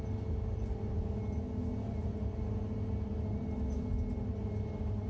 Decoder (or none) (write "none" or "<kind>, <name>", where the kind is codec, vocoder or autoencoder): none